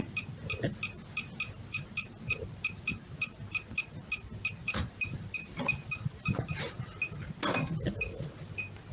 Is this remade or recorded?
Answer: recorded